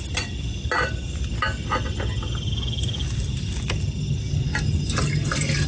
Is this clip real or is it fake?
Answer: real